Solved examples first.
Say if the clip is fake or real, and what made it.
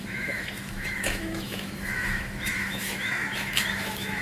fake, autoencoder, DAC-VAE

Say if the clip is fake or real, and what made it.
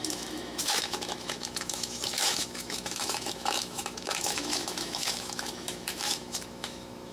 fake, autoencoder, DAC-VAE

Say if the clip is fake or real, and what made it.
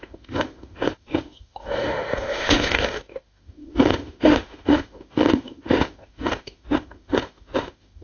fake, autoencoder, DAC-VAE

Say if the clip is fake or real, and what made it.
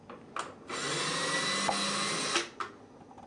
real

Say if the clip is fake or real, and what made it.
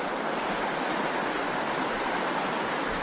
real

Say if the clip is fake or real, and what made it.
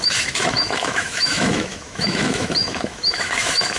fake, autoencoder, DAC-VAE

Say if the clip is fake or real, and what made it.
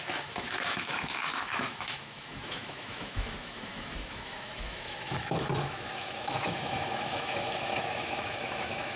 fake, autoencoder, DAC-VAE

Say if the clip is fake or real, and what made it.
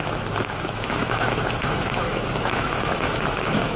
fake, autoencoder, DAC-VAE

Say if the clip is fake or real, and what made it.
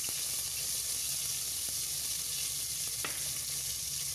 real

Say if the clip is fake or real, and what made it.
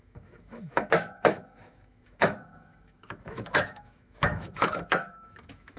fake, autoencoder, DAC-VAE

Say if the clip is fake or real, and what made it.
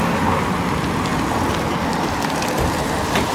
real